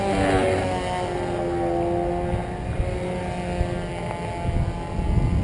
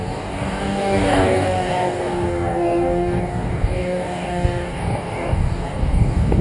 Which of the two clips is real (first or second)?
first